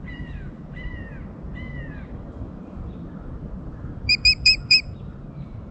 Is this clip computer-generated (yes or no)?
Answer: no